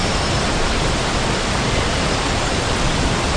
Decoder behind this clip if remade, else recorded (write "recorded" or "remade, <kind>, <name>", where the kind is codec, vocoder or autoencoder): remade, vocoder, BigVGAN v2